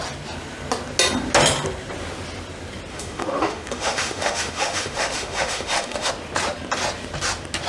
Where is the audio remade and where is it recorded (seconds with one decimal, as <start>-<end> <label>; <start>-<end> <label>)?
0.0-2.9 recorded; 2.9-6.1 remade; 6.1-7.7 recorded